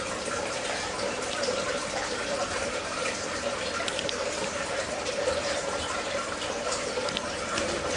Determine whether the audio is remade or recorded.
remade